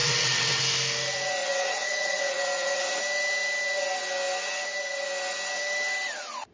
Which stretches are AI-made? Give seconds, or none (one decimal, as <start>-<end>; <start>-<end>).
0.0-0.6; 1.4-2.9